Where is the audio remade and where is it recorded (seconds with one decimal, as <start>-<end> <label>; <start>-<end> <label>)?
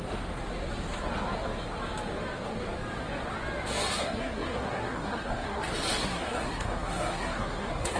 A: 0.0-4.0 recorded; 4.0-5.6 remade; 5.6-6.0 recorded; 6.0-8.0 remade